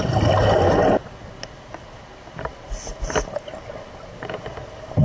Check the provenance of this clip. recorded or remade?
recorded